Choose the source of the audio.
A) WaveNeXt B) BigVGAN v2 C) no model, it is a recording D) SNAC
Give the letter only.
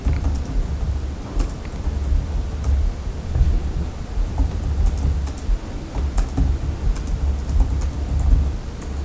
C